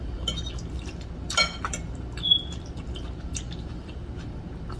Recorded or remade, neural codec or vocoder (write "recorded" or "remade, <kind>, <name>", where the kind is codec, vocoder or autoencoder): recorded